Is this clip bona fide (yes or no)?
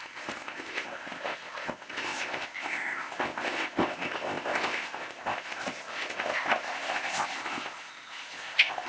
no